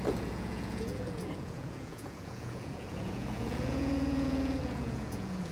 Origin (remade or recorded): remade